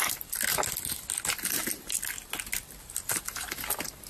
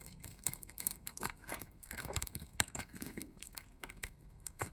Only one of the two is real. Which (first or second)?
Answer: first